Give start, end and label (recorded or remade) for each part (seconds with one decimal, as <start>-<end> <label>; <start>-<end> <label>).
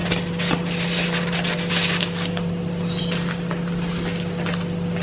0.0-3.0 remade; 3.0-5.0 recorded